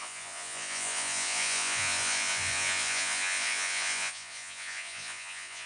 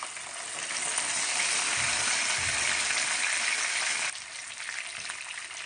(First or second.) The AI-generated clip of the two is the first